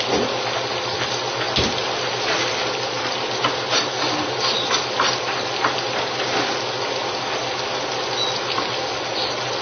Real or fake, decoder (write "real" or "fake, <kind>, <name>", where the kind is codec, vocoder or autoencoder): real